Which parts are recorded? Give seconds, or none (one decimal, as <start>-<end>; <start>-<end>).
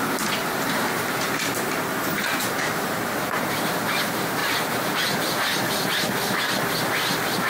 0.0-0.4; 3.7-4.4; 5.9-7.5